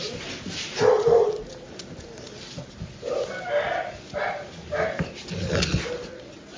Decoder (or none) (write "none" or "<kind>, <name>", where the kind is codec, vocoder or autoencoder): none